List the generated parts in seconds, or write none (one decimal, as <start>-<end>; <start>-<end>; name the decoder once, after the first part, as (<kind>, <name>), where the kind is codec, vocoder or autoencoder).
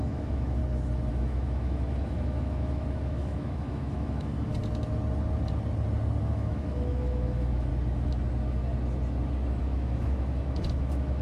0.0-0.6 (autoencoder, DAC-VAE); 1.1-4.5; 6.2-7.7; 9.6-11.2